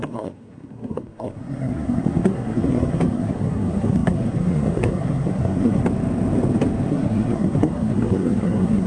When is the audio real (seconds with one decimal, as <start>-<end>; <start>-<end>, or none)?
5.8-6.9